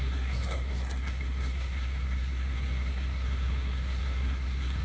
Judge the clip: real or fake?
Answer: fake